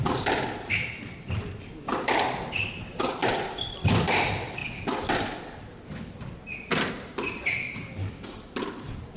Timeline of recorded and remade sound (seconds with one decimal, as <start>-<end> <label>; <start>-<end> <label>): 0.0-9.2 recorded